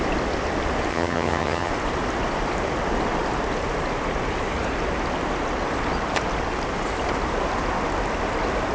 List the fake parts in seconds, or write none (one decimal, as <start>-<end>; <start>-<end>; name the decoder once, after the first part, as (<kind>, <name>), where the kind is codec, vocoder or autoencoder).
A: 0.9-1.7 (vocoder, HiFi-GAN)